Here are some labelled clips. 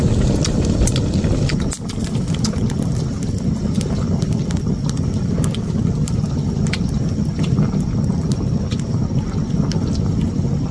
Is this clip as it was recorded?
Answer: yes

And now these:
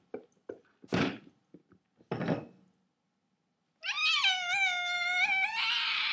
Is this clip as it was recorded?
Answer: yes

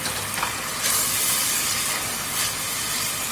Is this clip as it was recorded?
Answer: yes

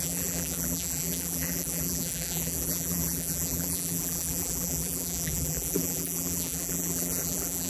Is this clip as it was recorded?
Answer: no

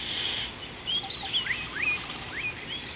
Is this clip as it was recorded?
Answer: yes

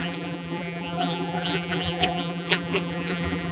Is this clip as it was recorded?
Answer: no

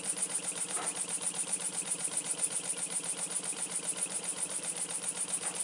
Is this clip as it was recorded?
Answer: no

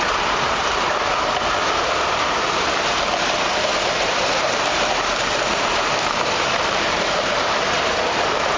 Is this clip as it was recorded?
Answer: no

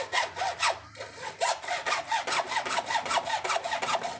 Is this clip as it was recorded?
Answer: yes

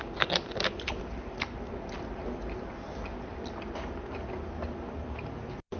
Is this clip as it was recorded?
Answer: yes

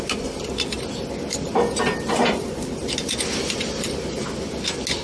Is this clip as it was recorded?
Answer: yes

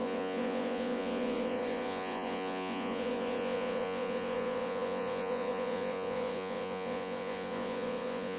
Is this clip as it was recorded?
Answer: no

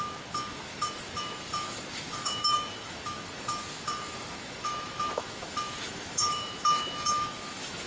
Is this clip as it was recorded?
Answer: no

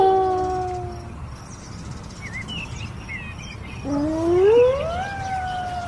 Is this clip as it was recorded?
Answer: yes